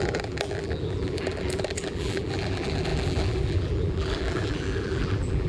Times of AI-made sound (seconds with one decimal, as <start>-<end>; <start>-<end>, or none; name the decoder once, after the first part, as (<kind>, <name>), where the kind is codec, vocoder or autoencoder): 0.0-5.5 (vocoder, BigVGAN v2)